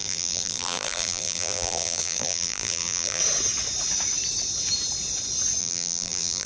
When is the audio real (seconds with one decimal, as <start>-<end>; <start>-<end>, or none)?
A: 3.2-5.6